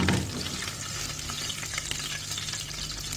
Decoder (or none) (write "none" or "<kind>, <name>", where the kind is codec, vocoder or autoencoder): none